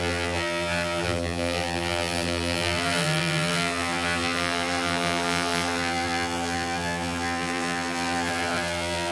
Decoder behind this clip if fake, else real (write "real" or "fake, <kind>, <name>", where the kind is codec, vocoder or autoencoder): fake, vocoder, BigVGAN v2